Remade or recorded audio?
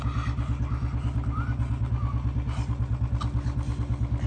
recorded